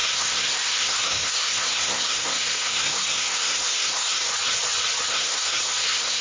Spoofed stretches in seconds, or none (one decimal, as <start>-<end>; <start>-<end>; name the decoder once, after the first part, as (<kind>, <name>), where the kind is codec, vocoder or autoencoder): 0.0-4.3 (codec, SNAC); 5.1-6.2